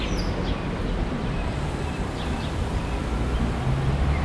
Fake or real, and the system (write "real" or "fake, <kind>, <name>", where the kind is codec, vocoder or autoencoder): real